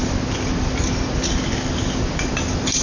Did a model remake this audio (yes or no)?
no